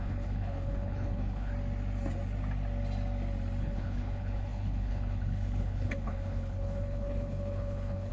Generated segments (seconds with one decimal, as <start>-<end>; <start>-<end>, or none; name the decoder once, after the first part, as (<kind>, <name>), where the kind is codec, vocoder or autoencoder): 0.0-1.5 (codec, HILCodec); 3.6-8.1

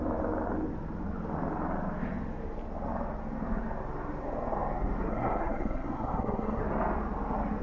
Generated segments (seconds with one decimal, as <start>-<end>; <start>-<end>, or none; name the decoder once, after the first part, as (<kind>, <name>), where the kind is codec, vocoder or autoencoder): 5.1-6.6 (codec, SNAC)

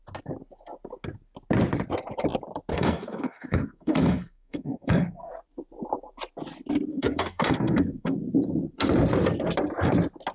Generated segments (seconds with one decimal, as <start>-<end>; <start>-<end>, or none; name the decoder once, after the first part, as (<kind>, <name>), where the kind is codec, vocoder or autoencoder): 2.7-5.3 (codec, SNAC); 6.9-8.2

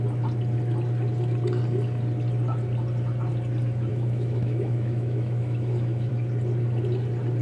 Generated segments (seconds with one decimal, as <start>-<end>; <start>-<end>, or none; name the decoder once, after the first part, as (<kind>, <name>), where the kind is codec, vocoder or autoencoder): 3.9-6.1 (autoencoder, DAC-VAE)

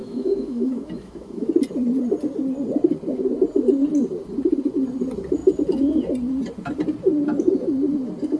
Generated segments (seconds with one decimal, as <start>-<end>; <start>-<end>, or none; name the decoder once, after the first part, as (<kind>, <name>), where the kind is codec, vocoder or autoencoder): 0.0-1.5 (autoencoder, DAC-VAE)

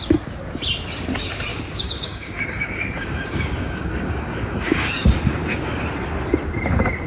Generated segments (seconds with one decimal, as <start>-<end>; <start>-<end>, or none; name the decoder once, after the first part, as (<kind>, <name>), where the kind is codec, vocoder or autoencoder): 1.5-5.8 (codec, DAC)